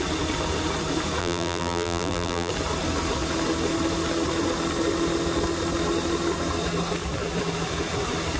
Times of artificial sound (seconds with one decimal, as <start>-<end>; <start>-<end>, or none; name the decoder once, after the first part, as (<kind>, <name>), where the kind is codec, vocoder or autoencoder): 1.2-2.5 (vocoder, BigVGAN v2)